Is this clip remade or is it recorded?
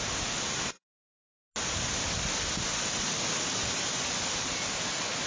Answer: recorded